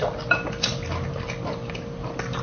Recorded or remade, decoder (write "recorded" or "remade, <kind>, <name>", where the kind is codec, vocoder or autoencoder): recorded